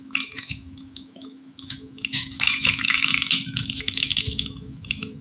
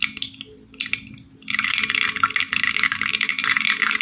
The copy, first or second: first